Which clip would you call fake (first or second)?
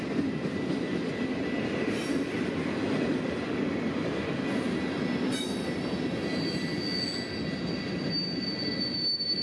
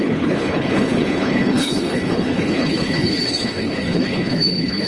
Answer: second